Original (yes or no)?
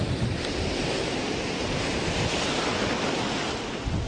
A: yes